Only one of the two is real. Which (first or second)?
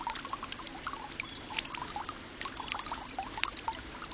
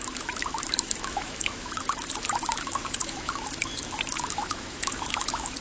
first